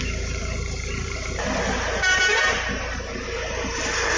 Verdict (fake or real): fake